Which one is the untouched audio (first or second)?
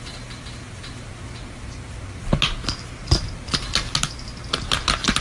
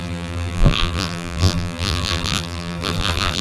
first